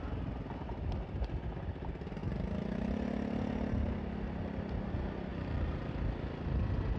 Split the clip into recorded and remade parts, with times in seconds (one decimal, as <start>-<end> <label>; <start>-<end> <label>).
0.0-5.3 recorded; 5.3-5.9 remade; 5.9-7.0 recorded